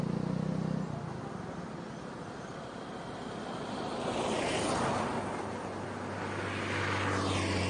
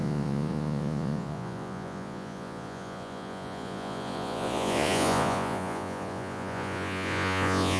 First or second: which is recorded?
first